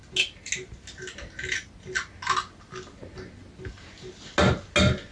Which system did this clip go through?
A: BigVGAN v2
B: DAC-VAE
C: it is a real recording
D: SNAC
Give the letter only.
C